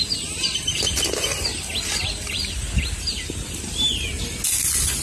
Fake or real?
real